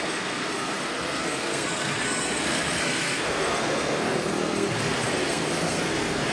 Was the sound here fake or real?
fake